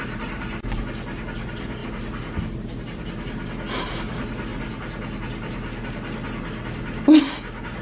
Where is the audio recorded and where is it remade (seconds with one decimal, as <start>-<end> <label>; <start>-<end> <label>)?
0.0-7.8 recorded

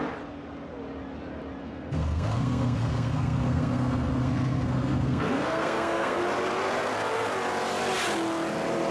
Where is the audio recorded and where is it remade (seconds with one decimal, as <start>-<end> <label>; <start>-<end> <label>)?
0.0-1.6 recorded; 1.6-6.2 remade; 6.2-8.9 recorded

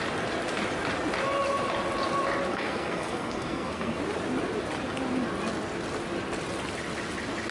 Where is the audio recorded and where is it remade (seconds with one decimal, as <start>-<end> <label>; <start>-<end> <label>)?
0.0-2.5 recorded; 2.5-4.0 remade; 4.0-7.5 recorded